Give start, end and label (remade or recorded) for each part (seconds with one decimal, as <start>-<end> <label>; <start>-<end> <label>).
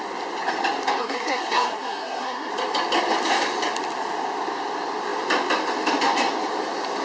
0.0-1.0 recorded; 1.0-2.5 remade; 2.5-7.0 recorded